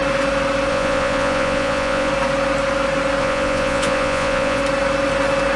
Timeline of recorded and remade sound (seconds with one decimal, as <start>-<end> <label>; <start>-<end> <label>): 0.0-0.7 recorded; 0.7-2.1 remade; 2.1-3.2 recorded; 3.2-4.6 remade; 4.6-5.6 recorded